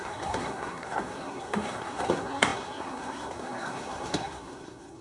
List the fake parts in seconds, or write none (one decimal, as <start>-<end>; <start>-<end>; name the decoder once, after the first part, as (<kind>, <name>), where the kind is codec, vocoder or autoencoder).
0.0-5.0 (codec, SNAC)

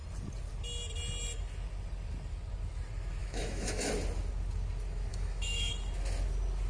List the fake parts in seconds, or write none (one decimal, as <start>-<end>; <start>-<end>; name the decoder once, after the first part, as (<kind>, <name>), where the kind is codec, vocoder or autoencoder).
3.2-3.9 (autoencoder, DAC-VAE); 5.1-5.7

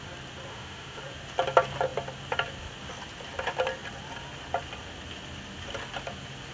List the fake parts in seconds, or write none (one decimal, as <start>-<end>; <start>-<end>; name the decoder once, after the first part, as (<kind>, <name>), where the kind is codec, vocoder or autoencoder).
0.5-1.0 (autoencoder, DAC-VAE)

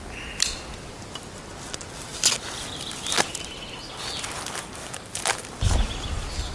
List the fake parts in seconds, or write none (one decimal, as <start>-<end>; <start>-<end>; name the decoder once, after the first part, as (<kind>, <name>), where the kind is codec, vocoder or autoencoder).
none

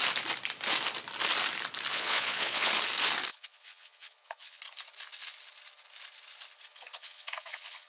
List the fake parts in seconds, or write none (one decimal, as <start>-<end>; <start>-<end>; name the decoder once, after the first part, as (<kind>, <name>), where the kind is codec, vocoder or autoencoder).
1.9-2.7 (vocoder, Vocos); 3.3-4.6; 6.7-7.9

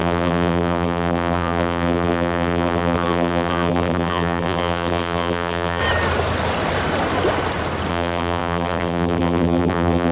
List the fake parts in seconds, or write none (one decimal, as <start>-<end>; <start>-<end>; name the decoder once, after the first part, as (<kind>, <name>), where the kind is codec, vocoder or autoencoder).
0.0-5.8 (vocoder, BigVGAN v2); 7.9-10.1